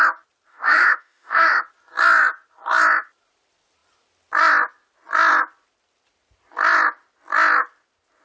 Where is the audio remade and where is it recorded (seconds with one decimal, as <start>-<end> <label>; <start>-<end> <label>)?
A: 0.0-0.5 recorded; 0.5-1.6 remade; 1.6-8.2 recorded